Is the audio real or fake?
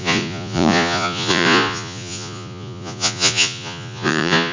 fake